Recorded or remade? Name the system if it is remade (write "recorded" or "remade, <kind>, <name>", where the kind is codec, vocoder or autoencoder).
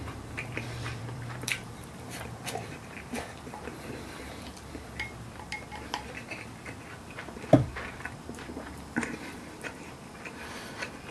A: remade, vocoder, BigVGAN v2